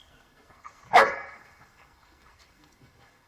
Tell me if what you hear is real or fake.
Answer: fake